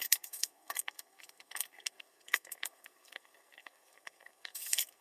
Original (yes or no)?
no